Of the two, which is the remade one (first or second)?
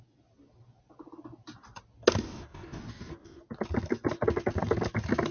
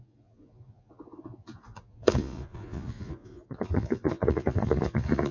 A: second